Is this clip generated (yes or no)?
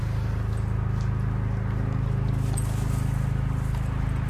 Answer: no